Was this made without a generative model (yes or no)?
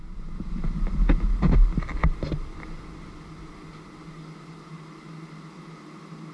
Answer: yes